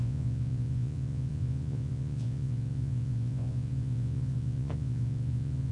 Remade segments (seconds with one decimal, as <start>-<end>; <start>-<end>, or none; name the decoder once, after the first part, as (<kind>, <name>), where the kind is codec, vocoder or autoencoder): 0.0-5.7 (vocoder, Vocos)